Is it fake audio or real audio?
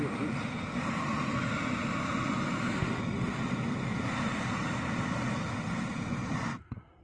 real